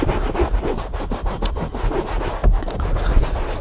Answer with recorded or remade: recorded